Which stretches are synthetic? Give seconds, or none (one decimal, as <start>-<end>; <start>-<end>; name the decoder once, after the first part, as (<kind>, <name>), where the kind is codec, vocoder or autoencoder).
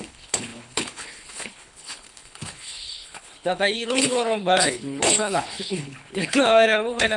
0.0-7.2 (codec, HILCodec)